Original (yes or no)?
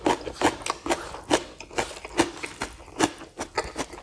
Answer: yes